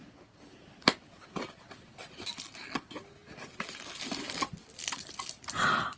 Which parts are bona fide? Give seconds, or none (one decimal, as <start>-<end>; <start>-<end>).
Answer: 0.0-6.0